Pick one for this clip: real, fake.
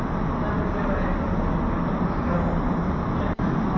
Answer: real